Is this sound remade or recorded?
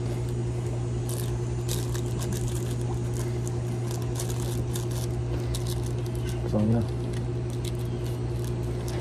recorded